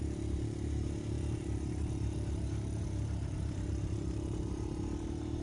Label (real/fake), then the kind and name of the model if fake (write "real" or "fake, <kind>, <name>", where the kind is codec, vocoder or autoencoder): fake, vocoder, BigVGAN v2